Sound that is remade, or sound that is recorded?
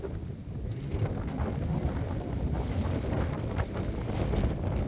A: recorded